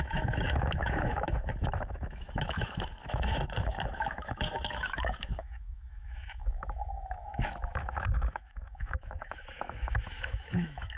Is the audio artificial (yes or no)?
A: yes